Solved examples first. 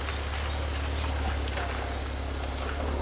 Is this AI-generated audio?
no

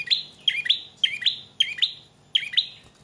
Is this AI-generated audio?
no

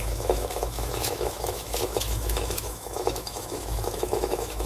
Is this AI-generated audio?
yes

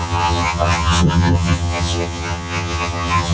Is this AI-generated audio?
yes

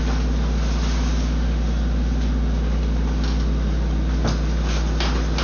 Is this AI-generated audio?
no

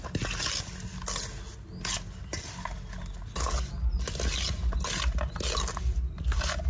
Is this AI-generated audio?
no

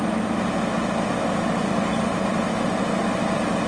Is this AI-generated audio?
no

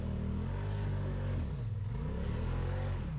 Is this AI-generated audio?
yes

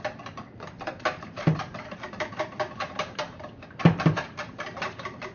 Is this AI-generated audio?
yes